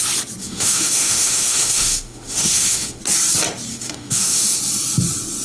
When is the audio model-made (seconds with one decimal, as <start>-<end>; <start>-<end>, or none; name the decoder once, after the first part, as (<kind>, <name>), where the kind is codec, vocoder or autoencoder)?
0.4-3.0 (autoencoder, DAC-VAE); 3.7-4.6